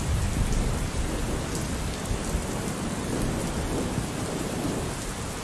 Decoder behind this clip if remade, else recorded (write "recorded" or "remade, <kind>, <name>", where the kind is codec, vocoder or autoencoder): recorded